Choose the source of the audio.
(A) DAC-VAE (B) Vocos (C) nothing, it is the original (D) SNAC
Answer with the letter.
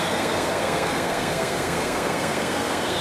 D